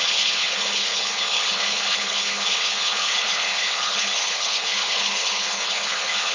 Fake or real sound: fake